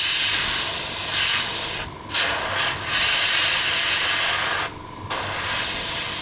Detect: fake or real real